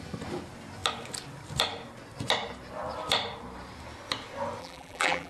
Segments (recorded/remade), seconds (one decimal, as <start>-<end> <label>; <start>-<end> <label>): 0.0-4.6 recorded; 4.6-5.3 remade